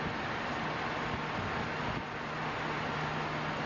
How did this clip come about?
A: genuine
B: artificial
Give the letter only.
A